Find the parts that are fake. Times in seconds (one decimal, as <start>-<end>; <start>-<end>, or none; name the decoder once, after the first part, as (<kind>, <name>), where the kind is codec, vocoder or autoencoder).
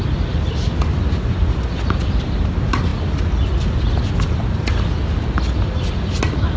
none